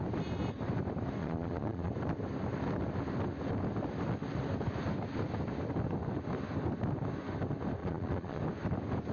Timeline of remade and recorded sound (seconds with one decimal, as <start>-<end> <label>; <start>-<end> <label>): 0.0-1.2 recorded; 1.2-1.9 remade; 1.9-7.8 recorded; 7.8-8.4 remade; 8.4-9.1 recorded